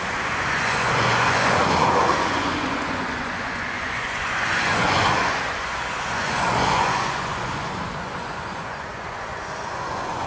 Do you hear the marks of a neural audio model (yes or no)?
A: yes